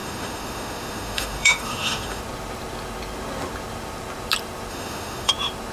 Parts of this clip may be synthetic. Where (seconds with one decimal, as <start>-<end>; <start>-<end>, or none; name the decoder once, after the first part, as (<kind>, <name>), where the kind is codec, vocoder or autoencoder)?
0.0-2.2 (autoencoder, DAC-VAE); 4.7-5.3